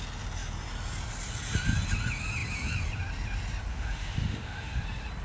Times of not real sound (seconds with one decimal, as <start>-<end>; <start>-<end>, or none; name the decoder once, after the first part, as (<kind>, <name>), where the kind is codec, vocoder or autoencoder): 3.7-4.8 (autoencoder, DAC-VAE)

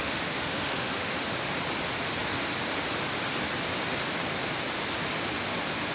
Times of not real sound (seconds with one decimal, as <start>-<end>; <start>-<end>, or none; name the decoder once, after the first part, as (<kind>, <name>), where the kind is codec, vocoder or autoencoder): 0.0-1.1 (autoencoder, DAC-VAE)

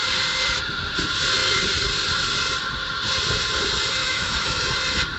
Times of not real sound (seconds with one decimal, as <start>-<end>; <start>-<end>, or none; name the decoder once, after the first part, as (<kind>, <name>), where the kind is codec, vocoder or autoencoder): 4.0-4.7 (autoencoder, DAC-VAE)

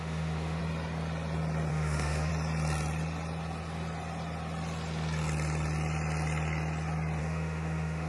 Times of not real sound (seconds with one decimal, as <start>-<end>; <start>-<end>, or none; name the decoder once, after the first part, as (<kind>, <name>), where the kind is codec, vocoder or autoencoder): 0.0-0.6 (autoencoder, DAC-VAE); 1.7-2.3; 7.2-8.1

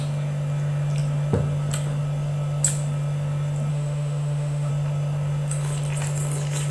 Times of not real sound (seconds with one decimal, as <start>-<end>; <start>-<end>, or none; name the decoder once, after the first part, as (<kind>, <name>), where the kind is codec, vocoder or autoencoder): 3.7-4.7 (autoencoder, DAC-VAE)